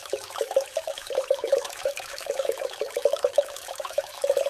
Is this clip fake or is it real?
fake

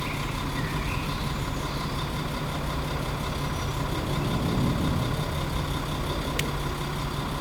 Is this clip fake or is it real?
real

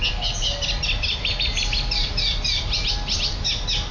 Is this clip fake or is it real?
real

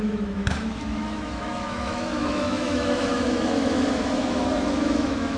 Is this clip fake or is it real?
fake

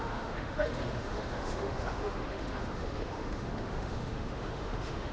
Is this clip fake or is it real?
fake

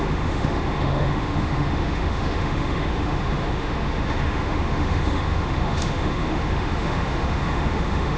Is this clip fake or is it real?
fake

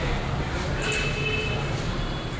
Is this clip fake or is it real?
real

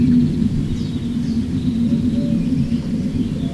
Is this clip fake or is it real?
real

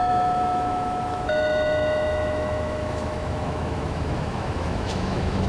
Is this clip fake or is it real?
fake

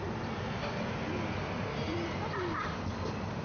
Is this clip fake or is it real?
real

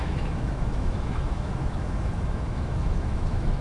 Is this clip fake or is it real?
fake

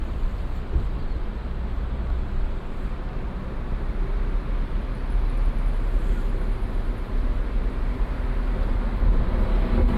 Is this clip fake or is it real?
real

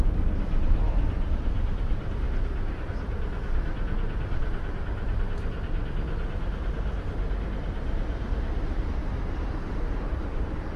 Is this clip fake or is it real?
real